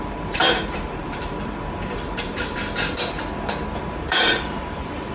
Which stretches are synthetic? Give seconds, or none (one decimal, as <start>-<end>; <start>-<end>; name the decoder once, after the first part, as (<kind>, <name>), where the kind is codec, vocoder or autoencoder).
0.0-2.6 (vocoder, BigVGAN v2); 3.8-5.1